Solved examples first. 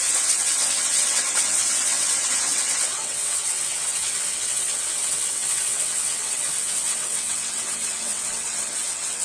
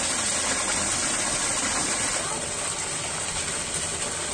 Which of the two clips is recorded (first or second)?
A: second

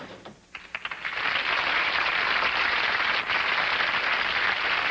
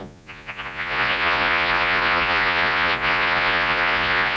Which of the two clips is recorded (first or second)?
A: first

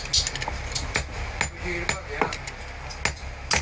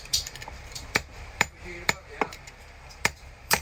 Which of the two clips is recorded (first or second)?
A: first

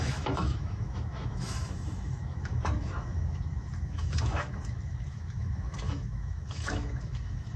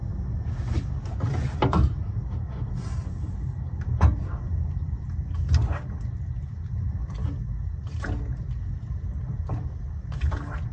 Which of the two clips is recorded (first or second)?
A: second